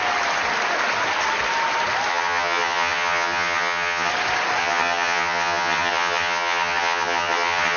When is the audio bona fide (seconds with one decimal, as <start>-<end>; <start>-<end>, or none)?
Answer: 0.0-2.1; 4.1-4.6